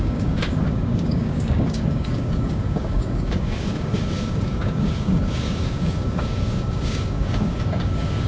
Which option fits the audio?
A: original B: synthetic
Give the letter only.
B